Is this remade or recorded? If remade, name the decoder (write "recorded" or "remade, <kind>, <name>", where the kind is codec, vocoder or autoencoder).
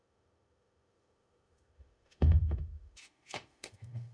remade, autoencoder, DAC-VAE